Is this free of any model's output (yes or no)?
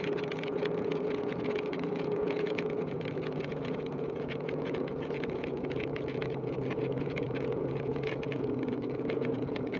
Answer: no